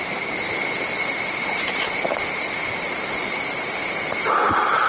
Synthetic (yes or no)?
no